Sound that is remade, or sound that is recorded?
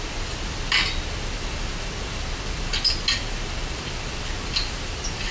recorded